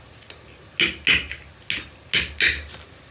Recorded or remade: recorded